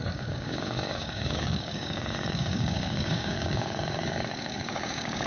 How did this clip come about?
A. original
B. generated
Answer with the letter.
B